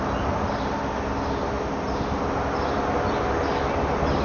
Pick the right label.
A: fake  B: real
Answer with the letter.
B